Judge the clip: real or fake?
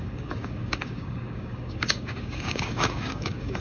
fake